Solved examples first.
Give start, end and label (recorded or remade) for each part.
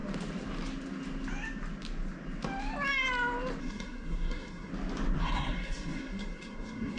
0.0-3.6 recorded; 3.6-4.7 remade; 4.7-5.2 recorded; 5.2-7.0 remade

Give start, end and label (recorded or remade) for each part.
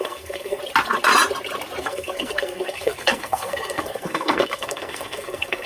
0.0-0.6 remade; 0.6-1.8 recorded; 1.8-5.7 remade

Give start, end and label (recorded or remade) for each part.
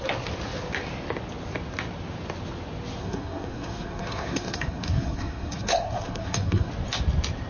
0.0-3.0 recorded; 3.0-6.7 remade; 6.7-7.5 recorded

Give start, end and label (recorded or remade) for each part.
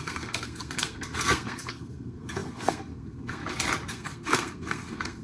0.0-3.4 remade; 3.4-3.9 recorded; 3.9-5.2 remade